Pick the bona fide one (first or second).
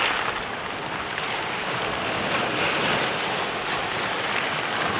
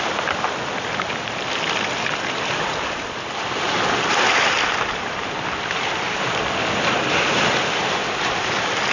first